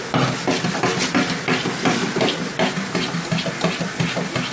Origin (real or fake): real